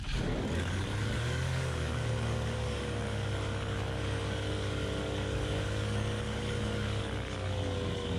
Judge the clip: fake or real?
fake